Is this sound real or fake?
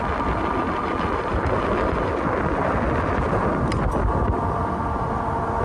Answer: real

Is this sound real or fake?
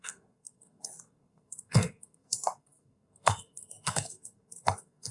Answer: fake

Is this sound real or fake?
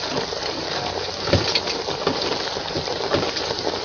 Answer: real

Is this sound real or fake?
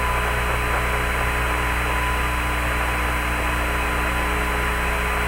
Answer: real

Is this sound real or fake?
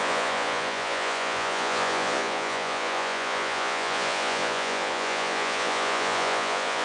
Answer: fake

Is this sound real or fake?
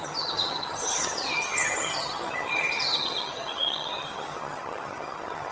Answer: fake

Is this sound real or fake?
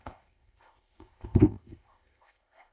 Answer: fake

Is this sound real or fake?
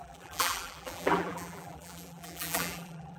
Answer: fake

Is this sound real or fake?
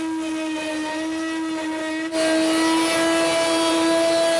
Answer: real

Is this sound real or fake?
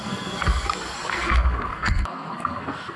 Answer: fake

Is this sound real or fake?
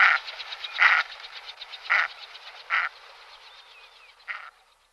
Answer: real